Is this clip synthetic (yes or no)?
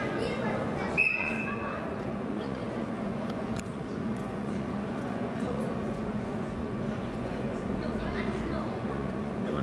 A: yes